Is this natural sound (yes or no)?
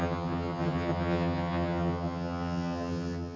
no